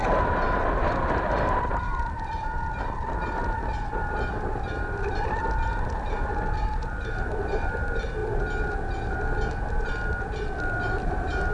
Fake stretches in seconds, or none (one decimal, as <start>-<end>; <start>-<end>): none